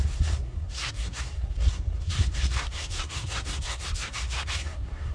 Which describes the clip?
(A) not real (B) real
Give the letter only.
A